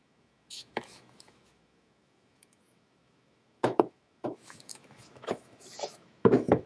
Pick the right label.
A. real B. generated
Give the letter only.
B